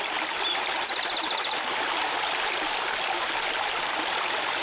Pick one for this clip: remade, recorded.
recorded